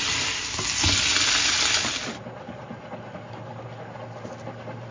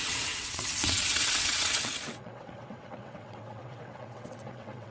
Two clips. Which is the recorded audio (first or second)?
first